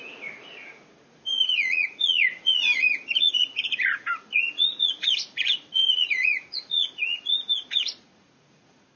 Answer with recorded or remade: remade